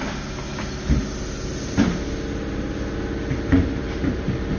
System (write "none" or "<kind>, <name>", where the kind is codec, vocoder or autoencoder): none